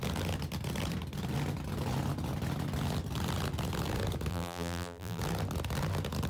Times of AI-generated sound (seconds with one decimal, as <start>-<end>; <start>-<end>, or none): 4.3-5.2

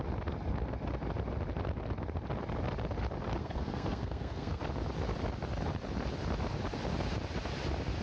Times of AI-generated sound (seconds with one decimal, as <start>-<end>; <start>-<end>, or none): 3.4-4.6

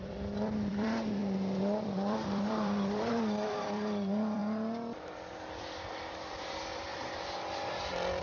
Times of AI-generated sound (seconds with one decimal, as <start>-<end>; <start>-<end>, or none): 0.0-4.4; 6.0-6.9